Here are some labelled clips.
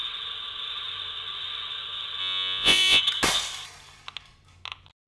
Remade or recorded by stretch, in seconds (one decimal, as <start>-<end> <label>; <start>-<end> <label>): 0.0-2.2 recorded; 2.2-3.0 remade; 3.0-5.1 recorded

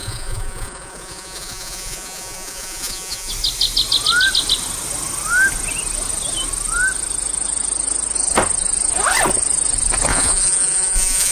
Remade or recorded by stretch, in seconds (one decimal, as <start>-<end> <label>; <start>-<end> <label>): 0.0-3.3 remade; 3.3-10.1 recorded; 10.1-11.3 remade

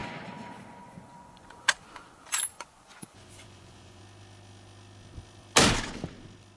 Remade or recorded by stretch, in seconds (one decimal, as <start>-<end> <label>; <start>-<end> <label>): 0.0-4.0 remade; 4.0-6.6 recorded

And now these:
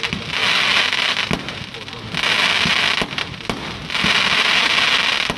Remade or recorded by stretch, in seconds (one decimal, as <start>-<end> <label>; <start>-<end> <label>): 0.0-5.4 recorded

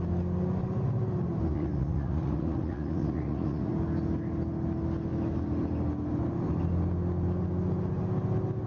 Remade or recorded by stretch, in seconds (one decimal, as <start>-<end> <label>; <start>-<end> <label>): 0.0-1.5 recorded; 1.5-3.7 remade; 3.7-8.7 recorded

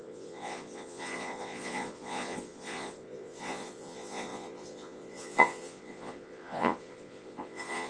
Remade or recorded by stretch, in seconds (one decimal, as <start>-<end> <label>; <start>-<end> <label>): 0.0-7.9 remade

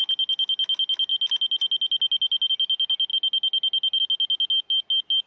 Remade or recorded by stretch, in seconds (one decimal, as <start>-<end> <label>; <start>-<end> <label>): 0.0-5.3 recorded

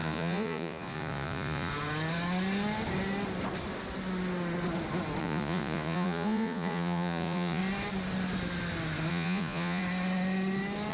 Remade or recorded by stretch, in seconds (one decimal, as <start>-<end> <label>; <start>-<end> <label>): 0.0-1.7 remade; 1.7-5.2 recorded; 5.2-7.6 remade; 7.6-9.1 recorded; 9.1-9.8 remade; 9.8-10.9 recorded